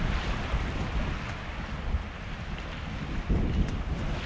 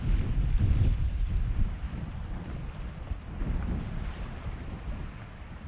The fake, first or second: second